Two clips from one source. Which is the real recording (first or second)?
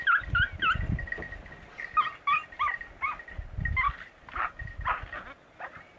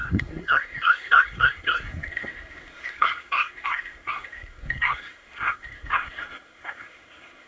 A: first